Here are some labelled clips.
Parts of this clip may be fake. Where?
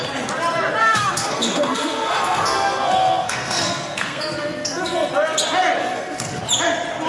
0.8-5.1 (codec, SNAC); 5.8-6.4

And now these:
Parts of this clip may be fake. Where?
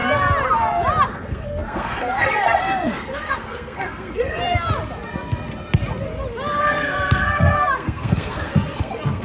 1.1-4.4 (codec, SNAC); 6.6-9.2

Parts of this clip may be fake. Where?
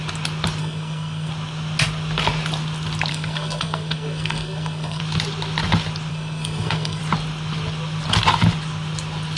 0.6-1.3 (codec, SNAC); 3.1-5.0; 6.1-7.0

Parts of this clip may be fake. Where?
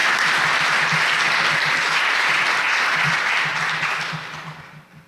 none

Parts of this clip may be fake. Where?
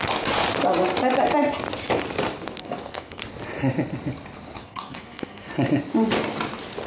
2.6-3.2 (codec, SNAC); 4.6-5.5